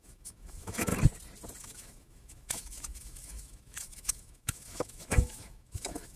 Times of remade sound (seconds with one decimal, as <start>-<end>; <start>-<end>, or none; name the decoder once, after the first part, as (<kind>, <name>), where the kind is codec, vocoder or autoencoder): 0.0-0.9 (autoencoder, DAC-VAE); 1.6-6.2